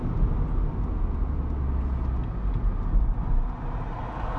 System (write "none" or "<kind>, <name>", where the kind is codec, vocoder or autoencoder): none